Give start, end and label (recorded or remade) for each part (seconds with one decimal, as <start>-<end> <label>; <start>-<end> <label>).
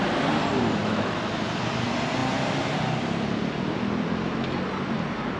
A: 0.0-0.8 recorded; 0.8-1.4 remade; 1.4-5.4 recorded